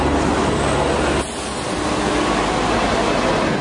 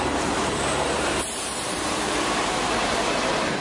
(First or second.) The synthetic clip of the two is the second